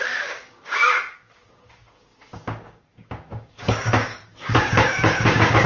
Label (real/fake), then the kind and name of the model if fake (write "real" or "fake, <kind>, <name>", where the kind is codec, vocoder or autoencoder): fake, codec, DAC